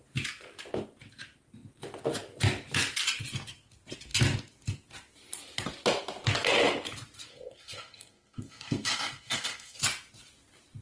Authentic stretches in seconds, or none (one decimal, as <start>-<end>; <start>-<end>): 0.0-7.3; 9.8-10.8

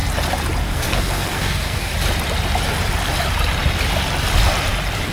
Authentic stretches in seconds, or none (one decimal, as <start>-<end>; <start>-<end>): 0.0-0.6; 1.9-5.1

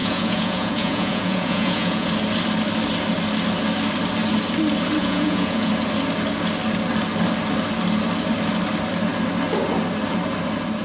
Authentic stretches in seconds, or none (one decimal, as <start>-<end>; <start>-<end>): 2.1-5.0; 5.7-10.8

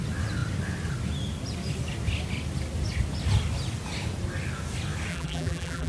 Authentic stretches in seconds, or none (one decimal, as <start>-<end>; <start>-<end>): 0.0-5.1